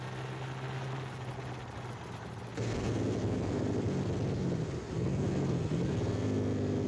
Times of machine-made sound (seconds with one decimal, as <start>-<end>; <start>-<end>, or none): none